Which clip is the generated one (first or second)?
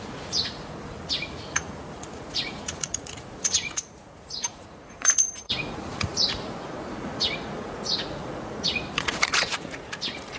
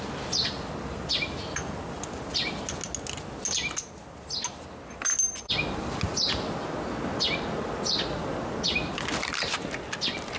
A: first